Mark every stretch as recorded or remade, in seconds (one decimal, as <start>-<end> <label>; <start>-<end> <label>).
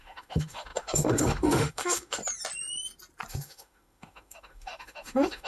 0.0-2.2 remade; 2.2-3.3 recorded; 3.3-5.5 remade